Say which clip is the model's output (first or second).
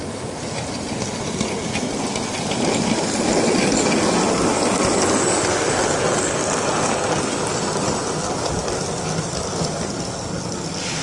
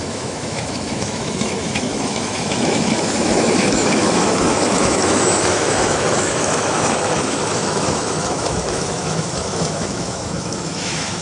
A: second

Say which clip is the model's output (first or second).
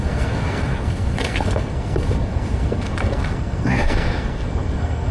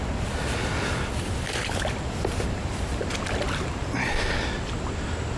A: first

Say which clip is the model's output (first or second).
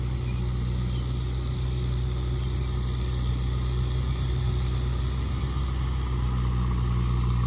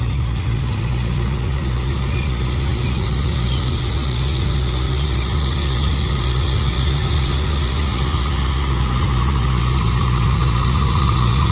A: second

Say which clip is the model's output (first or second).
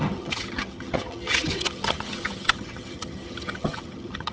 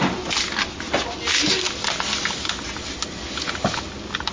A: first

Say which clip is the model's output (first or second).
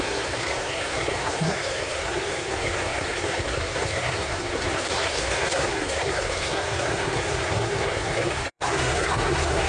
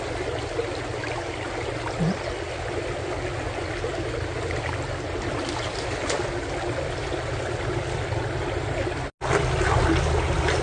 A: first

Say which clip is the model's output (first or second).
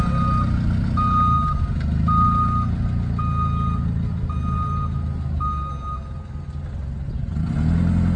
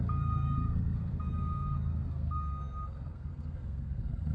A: second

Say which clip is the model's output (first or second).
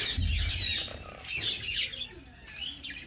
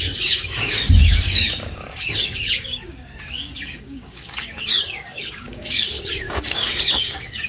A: second